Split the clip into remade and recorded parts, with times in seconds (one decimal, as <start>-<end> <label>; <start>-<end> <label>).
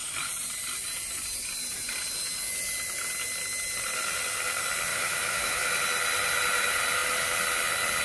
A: 0.0-4.9 recorded; 4.9-5.7 remade; 5.7-8.0 recorded